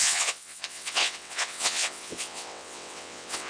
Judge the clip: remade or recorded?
remade